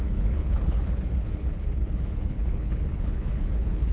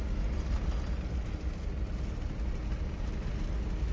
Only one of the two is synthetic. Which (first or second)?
first